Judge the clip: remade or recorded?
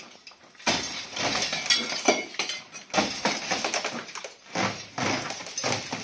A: recorded